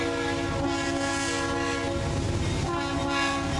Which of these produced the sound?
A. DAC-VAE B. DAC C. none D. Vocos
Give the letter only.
C